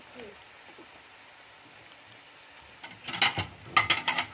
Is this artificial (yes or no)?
no